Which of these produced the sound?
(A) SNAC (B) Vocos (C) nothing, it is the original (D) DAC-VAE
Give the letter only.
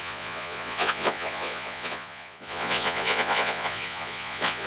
B